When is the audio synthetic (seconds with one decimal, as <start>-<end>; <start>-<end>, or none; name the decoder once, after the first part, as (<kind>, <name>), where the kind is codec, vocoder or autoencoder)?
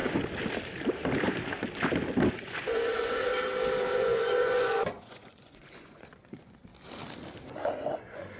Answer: 2.3-3.3 (vocoder, Vocos); 3.8-6.7; 7.6-8.4